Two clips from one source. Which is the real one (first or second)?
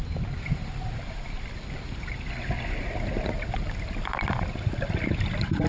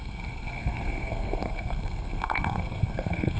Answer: first